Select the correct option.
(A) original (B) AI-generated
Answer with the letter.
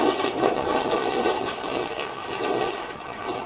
B